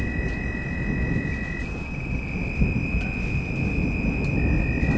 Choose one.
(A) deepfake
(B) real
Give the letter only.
B